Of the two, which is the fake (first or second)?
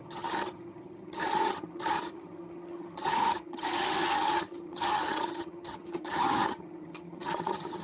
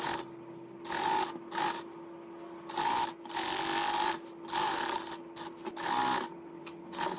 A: first